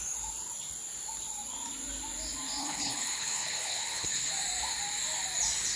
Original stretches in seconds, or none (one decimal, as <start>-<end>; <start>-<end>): 0.0-2.6; 4.3-5.8